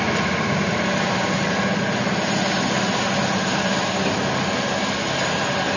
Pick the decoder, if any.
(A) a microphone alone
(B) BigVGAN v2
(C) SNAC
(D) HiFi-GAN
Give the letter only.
A